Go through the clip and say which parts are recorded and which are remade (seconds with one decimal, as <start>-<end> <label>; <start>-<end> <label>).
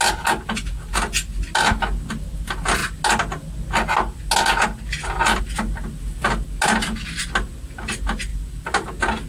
0.0-9.3 recorded